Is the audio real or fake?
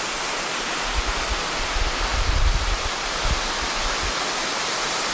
real